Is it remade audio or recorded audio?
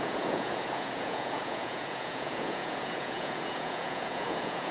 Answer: remade